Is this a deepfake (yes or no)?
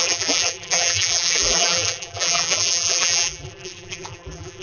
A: yes